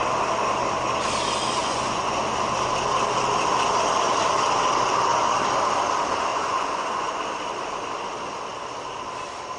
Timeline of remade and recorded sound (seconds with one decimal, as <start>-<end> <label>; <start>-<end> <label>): 0.0-1.6 recorded; 1.6-2.2 remade; 2.2-6.3 recorded; 6.3-7.2 remade; 7.2-9.6 recorded